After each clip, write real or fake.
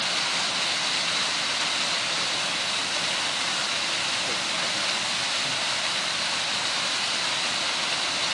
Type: real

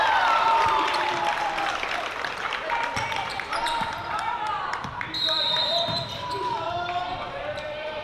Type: fake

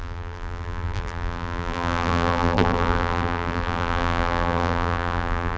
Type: fake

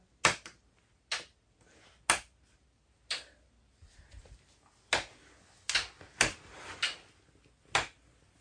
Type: real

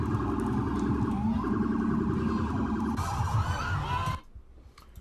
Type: real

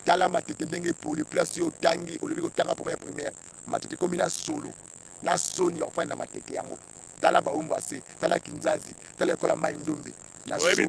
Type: fake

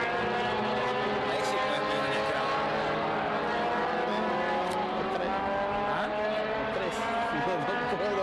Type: real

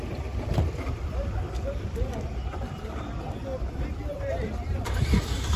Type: fake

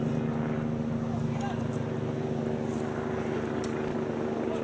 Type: real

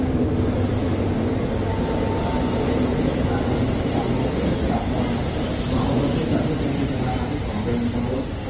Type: real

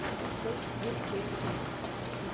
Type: real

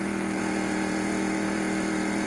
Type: fake